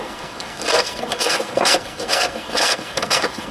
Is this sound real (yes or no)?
no